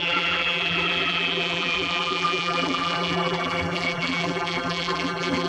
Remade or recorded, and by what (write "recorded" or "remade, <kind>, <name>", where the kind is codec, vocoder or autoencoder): remade, vocoder, BigVGAN v2